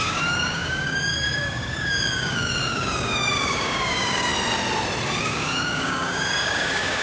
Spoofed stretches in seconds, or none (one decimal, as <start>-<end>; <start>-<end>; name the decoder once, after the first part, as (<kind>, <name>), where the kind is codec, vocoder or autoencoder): 0.0-4.3 (codec, DAC); 5.2-7.0